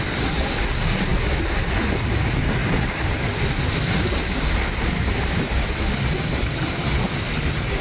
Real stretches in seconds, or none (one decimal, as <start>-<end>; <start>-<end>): 0.0-7.8